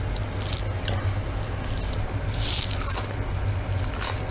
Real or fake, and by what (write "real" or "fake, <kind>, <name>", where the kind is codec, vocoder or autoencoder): real